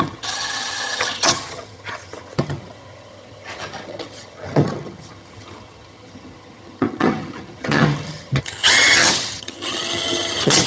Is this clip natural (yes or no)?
no